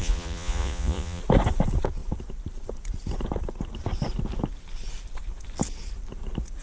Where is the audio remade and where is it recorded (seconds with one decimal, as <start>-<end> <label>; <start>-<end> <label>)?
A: 0.0-1.2 remade; 1.2-6.6 recorded